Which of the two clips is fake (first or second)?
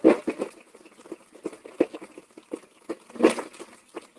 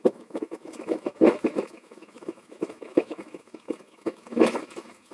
second